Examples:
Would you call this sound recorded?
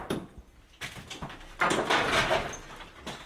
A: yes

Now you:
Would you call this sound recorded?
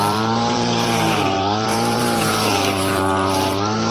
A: no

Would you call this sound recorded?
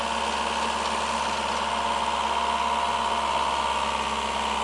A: yes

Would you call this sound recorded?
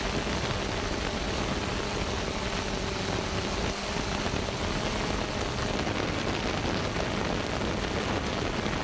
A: yes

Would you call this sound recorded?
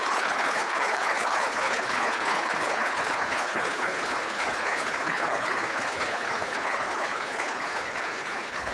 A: no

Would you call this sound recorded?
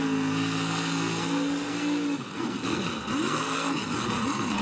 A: no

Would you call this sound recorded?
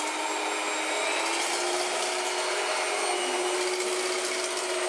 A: yes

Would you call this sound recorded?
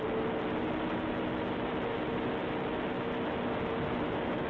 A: yes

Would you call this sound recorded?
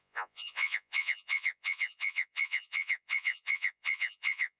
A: no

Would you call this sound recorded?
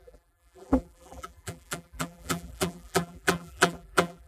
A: no